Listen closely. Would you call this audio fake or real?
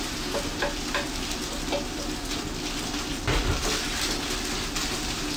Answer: real